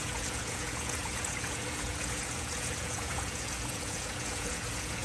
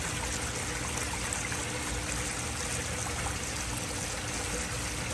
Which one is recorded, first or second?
second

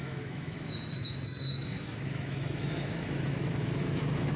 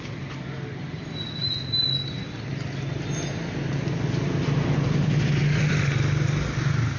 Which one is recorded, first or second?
second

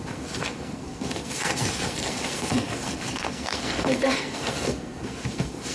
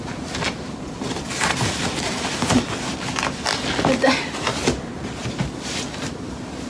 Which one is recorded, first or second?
second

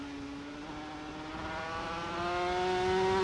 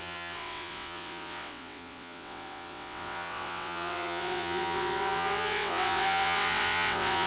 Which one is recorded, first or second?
first